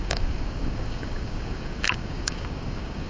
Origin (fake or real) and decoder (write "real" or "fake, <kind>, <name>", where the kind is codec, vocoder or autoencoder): fake, codec, DAC